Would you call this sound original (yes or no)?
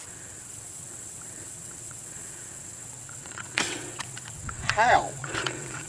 no